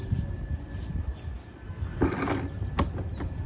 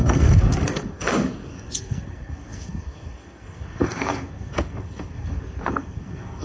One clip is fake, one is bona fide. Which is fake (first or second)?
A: second